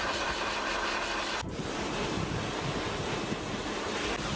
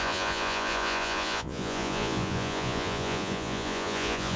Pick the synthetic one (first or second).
second